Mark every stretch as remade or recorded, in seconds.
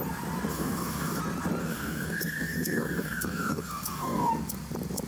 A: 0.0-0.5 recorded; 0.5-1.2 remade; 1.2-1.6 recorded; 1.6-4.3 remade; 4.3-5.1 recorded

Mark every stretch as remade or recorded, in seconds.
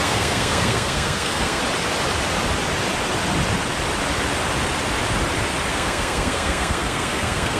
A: 0.0-1.6 remade; 1.6-5.7 recorded; 5.7-7.6 remade